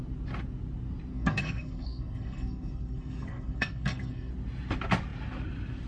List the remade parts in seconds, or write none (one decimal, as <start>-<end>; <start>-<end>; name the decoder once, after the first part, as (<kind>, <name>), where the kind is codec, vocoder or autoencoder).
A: 1.1-4.3 (codec, SNAC)